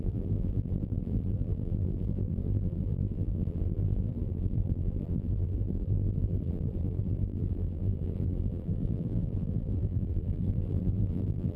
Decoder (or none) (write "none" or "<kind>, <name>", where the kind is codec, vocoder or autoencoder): vocoder, BigVGAN v2